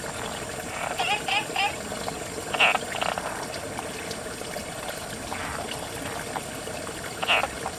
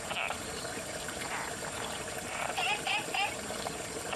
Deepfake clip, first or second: second